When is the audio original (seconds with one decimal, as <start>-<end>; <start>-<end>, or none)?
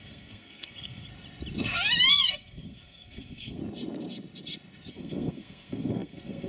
1.1-2.1; 3.6-4.9